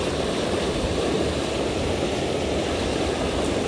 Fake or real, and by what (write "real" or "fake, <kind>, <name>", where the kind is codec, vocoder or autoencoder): real